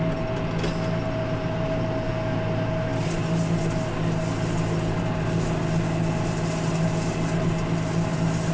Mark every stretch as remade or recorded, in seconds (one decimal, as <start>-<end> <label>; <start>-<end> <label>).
0.0-8.5 recorded